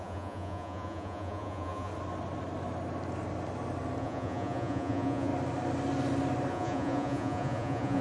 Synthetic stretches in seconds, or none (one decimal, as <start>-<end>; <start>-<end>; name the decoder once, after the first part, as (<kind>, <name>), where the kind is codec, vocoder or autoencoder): 0.0-1.9 (vocoder, Vocos); 4.0-5.3; 6.5-8.0